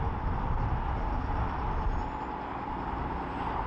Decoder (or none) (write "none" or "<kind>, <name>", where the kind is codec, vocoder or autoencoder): none